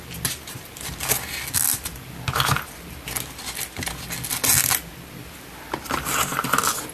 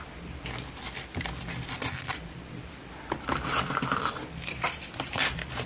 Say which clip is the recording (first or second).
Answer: first